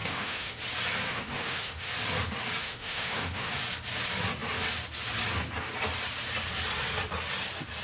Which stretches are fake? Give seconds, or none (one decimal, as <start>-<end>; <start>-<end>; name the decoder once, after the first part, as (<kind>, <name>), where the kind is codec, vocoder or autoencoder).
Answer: 0.0-0.6 (autoencoder, DAC-VAE); 1.1-1.9; 2.6-3.5